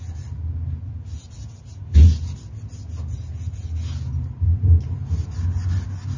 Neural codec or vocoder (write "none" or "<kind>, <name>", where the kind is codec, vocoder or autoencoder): none